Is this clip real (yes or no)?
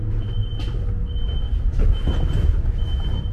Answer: yes